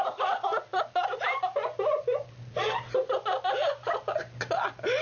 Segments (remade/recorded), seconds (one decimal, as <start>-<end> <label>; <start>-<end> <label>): 0.0-5.0 recorded